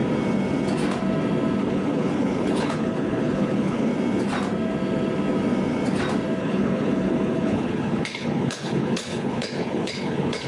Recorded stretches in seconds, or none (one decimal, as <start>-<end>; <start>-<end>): 0.0-1.6; 3.9-6.4